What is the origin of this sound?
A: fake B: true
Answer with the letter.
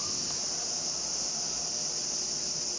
B